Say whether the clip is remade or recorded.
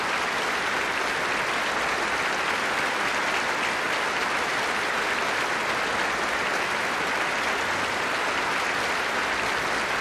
recorded